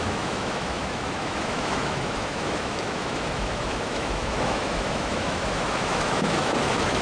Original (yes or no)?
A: no